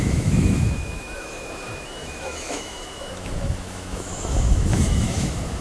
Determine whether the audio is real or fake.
fake